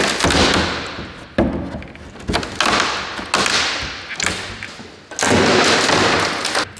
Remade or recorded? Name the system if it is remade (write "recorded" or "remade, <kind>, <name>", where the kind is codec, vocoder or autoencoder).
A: recorded